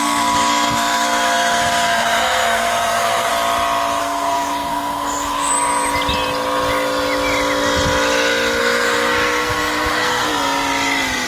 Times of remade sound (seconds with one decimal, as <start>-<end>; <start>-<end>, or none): 0.0-3.3; 4.0-5.5; 8.6-10.3